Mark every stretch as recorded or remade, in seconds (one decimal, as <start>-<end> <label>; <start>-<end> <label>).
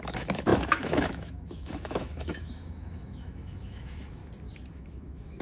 0.0-4.2 remade; 4.2-4.7 recorded; 4.7-5.4 remade